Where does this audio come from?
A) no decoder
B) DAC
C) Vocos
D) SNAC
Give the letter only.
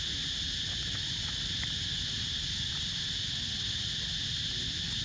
A